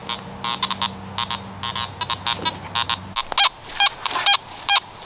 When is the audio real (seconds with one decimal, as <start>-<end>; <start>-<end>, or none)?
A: 0.0-5.0